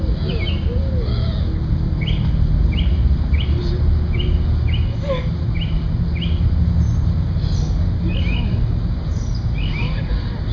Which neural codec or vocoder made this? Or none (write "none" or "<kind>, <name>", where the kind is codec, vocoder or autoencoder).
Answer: none